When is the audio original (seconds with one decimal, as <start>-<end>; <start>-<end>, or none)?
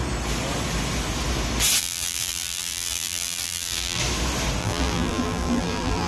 0.0-1.8; 4.0-4.6